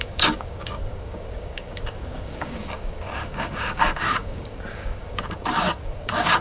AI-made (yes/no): yes